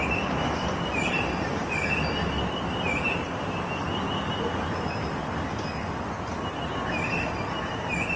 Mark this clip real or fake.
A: real